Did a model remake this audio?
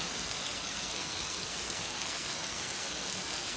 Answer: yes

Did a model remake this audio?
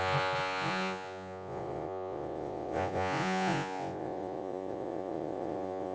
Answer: yes